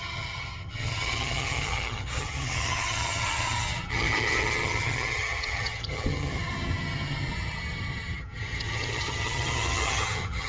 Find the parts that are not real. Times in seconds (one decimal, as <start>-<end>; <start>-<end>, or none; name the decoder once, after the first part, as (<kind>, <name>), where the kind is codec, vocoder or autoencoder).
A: 0.0-10.5 (vocoder, HiFi-GAN)